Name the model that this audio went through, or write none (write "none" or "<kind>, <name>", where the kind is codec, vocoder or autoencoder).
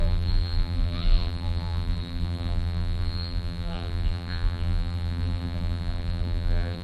vocoder, BigVGAN v2